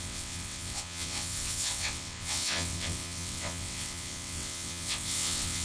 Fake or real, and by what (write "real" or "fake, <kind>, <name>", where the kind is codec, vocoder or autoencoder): fake, vocoder, WaveNeXt